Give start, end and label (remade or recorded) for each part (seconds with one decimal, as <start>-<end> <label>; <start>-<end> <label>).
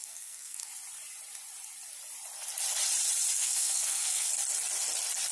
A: 0.0-0.7 remade; 0.7-3.4 recorded; 3.4-4.3 remade; 4.3-5.3 recorded